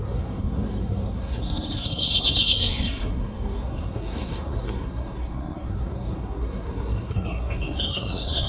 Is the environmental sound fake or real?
fake